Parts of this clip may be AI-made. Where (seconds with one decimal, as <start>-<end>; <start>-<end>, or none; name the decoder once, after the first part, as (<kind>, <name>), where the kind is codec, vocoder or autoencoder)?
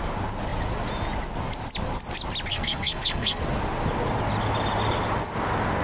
2.5-3.4 (codec, SNAC)